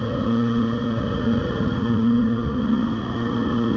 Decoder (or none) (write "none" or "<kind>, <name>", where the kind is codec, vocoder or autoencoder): vocoder, Vocos